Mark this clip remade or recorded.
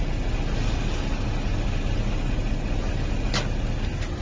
recorded